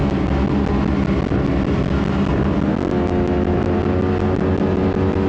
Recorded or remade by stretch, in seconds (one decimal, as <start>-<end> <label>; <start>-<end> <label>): 0.0-5.3 recorded